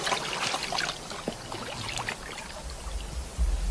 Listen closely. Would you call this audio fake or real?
real